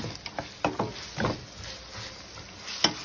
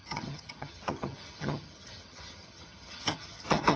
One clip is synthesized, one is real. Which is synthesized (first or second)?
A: second